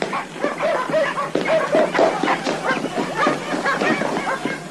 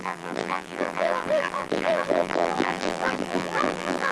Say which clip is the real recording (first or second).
first